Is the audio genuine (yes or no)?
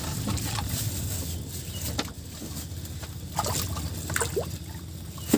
yes